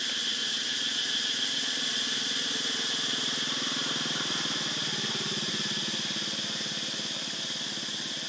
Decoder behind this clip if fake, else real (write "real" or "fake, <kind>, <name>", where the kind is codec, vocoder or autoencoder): fake, vocoder, BigVGAN v2